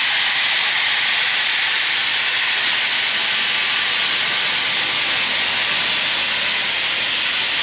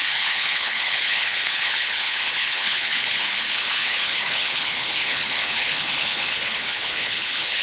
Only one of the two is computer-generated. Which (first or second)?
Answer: second